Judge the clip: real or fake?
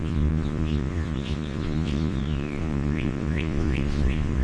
fake